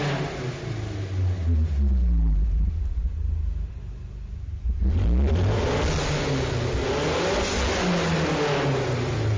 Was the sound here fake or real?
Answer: real